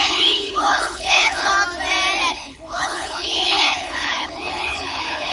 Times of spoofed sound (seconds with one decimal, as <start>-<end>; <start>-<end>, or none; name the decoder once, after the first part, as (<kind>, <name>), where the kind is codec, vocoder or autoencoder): 0.0-1.5 (codec, HILCodec); 2.3-5.3